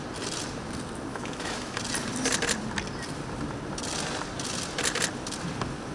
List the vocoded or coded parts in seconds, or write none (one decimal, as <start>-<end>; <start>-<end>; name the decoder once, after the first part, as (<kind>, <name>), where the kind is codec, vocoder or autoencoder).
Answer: 1.1-1.8 (autoencoder, DAC-VAE)